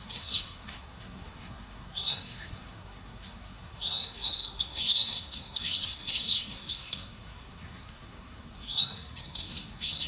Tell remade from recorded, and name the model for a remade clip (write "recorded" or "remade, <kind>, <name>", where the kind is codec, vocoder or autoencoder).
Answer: remade, codec, SNAC